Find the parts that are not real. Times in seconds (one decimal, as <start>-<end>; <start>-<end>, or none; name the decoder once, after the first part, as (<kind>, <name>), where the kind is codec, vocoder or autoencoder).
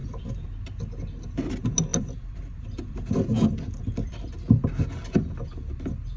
0.0-0.6 (vocoder, BigVGAN v2); 1.9-4.3